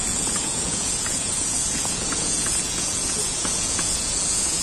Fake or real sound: fake